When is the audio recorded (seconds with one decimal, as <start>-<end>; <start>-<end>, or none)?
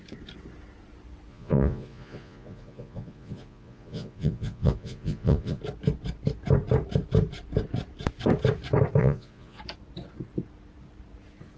0.0-1.3; 5.6-9.0; 9.6-11.6